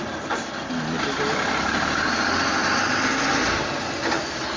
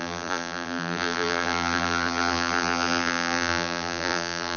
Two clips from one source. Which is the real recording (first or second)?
first